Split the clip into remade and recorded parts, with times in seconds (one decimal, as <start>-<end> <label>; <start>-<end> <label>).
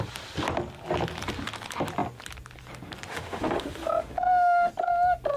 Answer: 0.0-3.1 recorded; 3.1-4.7 remade; 4.7-5.4 recorded